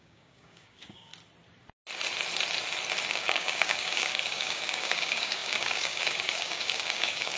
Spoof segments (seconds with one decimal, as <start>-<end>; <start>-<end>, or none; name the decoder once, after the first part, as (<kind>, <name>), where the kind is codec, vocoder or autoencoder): 0.0-1.1 (codec, DAC); 3.1-7.4